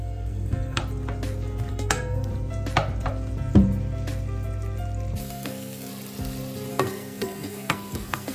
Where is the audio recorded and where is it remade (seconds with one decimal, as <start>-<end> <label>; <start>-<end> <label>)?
0.0-0.8 remade; 0.8-1.7 recorded; 1.7-2.3 remade; 2.3-5.2 recorded; 5.2-5.9 remade; 5.9-6.7 recorded; 6.7-8.3 remade